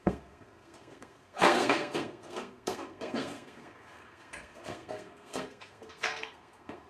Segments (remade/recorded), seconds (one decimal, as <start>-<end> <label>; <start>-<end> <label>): 0.0-6.9 remade